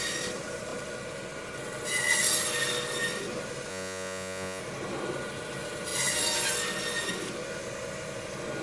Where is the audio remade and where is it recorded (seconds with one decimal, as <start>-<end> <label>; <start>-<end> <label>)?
0.0-3.7 recorded; 3.7-4.6 remade; 4.6-8.6 recorded